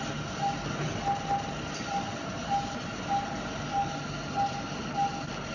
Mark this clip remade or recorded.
recorded